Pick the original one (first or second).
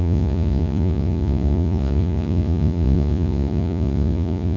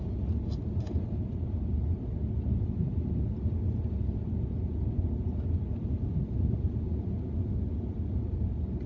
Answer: second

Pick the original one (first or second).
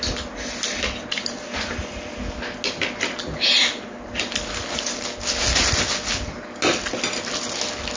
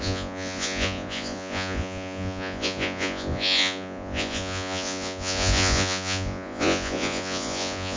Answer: first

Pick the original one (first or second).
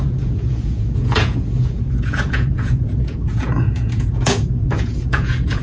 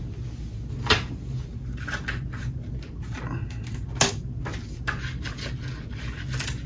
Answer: second